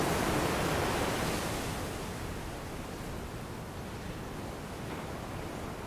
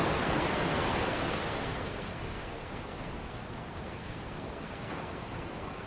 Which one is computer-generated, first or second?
second